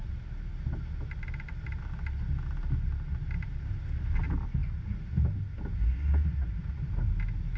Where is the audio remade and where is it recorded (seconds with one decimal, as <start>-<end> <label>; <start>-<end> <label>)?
0.0-7.6 recorded